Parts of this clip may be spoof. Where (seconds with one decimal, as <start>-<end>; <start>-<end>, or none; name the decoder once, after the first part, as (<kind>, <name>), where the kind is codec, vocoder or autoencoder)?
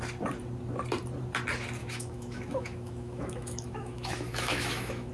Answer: 1.8-5.1 (autoencoder, DAC-VAE)